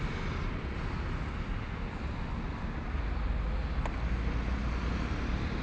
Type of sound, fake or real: real